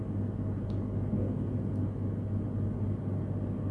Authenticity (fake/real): real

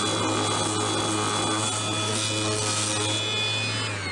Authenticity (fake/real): real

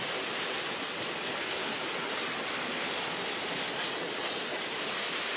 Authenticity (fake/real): real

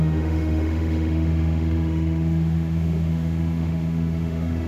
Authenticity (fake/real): fake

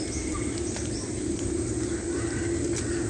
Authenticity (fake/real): real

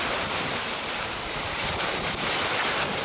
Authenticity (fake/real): fake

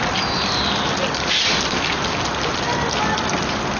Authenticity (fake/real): real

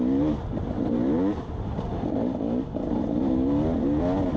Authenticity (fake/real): real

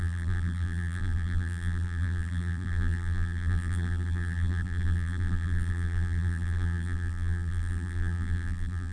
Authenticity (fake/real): fake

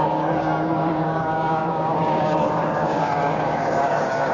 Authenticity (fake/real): fake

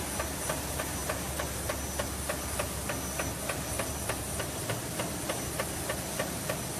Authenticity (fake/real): real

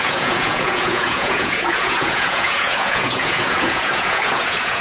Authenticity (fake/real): fake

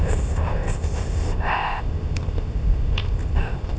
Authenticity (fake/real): fake